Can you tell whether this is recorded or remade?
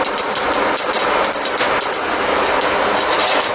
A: recorded